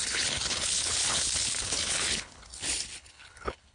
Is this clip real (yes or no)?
no